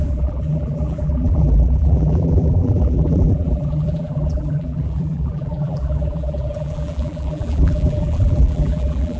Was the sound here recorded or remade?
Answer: remade